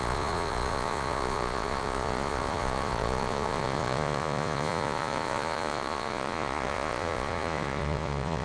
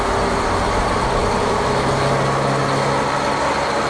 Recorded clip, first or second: second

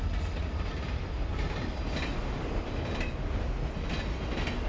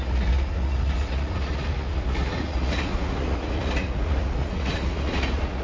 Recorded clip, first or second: first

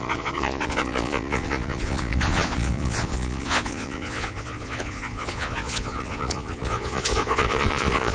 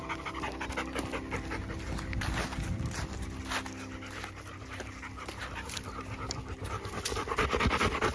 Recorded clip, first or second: second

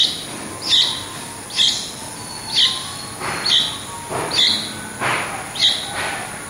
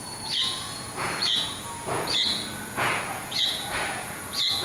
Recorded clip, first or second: first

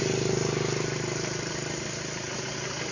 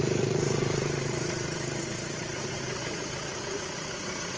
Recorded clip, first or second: first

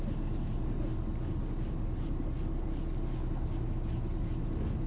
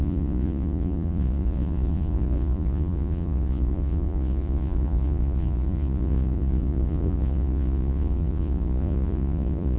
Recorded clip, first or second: first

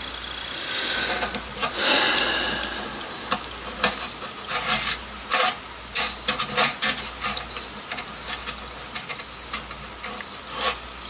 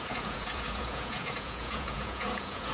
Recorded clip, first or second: first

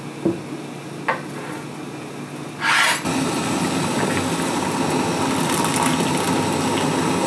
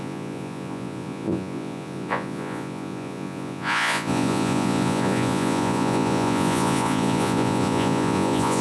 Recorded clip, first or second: first